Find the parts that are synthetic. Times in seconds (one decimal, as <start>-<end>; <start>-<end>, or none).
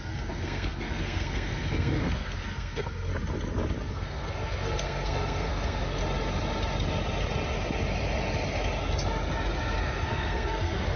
0.0-3.1; 3.9-6.0; 9.8-11.0